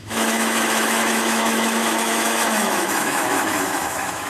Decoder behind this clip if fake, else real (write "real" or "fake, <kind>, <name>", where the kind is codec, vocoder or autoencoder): fake, autoencoder, DAC-VAE